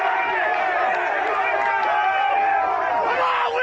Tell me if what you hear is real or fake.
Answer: real